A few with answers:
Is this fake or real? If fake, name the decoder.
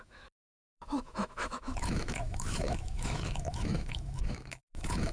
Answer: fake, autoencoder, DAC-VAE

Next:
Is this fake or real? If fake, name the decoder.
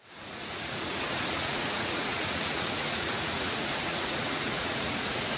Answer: fake, vocoder, Vocos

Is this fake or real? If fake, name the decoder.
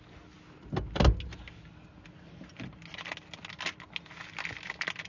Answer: real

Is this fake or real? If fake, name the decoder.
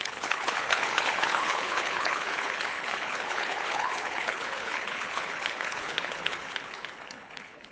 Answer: fake, codec, HILCodec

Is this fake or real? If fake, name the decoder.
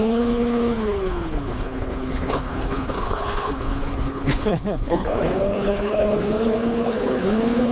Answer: fake, codec, HILCodec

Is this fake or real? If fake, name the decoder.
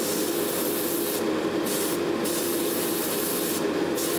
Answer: real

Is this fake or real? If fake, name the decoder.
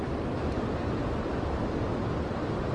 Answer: real